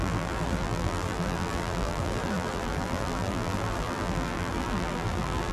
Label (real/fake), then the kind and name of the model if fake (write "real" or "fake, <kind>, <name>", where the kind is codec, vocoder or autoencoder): fake, vocoder, BigVGAN v2